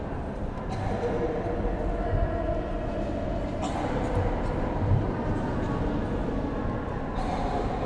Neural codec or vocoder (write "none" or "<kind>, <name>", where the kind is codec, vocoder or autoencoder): none